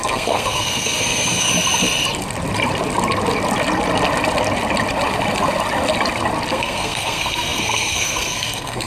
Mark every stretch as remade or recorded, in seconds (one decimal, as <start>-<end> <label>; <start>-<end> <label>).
0.0-1.5 remade; 1.5-6.5 recorded; 6.5-8.9 remade